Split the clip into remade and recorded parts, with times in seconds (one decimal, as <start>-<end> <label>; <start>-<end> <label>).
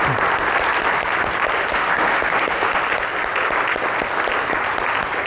0.0-1.7 recorded; 1.7-2.8 remade; 2.8-5.3 recorded